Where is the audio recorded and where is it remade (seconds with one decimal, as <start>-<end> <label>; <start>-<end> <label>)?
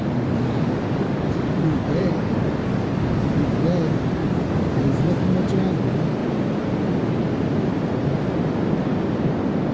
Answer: 0.0-3.3 remade; 3.3-4.2 recorded; 4.2-5.1 remade; 5.1-9.7 recorded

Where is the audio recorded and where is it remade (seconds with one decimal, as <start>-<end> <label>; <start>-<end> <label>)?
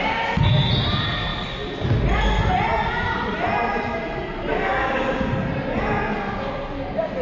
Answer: 0.0-4.5 recorded; 4.5-5.3 remade; 5.3-7.2 recorded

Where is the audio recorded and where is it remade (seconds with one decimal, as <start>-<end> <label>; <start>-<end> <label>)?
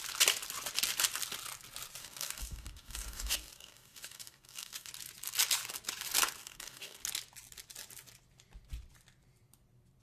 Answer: 0.0-2.0 recorded; 2.0-4.9 remade; 4.9-6.4 recorded; 6.4-7.0 remade; 7.0-10.0 recorded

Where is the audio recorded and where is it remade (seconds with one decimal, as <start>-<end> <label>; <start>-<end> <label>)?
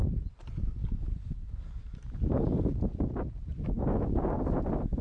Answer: 0.0-5.0 recorded